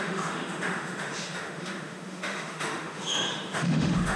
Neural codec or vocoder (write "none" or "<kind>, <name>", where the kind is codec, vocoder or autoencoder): autoencoder, DAC-VAE